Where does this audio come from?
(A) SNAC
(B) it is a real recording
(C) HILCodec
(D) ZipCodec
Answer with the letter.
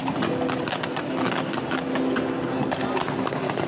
B